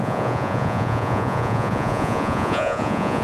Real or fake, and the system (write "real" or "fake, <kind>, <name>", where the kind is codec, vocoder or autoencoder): fake, vocoder, Vocos